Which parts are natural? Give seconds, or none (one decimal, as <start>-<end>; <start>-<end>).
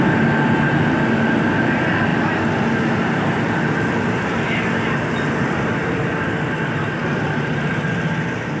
0.0-8.6